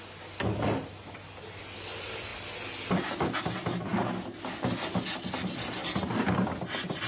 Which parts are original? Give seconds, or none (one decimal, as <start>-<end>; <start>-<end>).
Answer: 0.0-7.1